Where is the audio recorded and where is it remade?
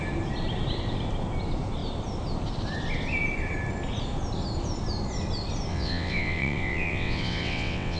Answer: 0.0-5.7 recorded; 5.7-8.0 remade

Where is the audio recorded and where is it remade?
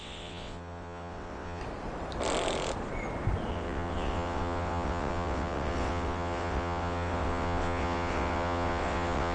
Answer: 0.0-1.6 remade; 1.6-3.5 recorded; 3.5-9.3 remade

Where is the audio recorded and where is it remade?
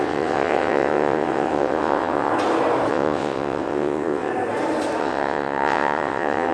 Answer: 0.0-2.3 remade; 2.3-2.9 recorded; 2.9-4.3 remade; 4.3-5.0 recorded; 5.0-6.5 remade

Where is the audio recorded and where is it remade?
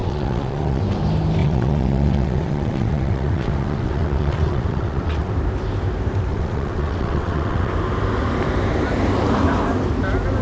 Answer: 0.0-0.8 remade; 0.8-1.4 recorded; 1.4-5.3 remade; 5.3-6.3 recorded; 6.3-7.7 remade; 7.7-10.4 recorded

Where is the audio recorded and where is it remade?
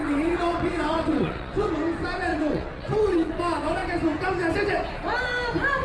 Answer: 0.0-1.7 remade; 1.7-2.3 recorded; 2.3-3.4 remade; 3.4-5.8 recorded